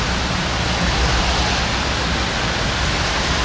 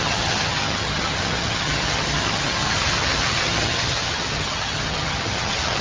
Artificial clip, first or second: second